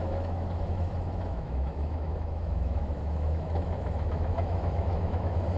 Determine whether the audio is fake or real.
fake